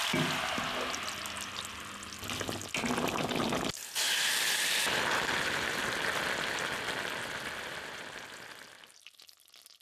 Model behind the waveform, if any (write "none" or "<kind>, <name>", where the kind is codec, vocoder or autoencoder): none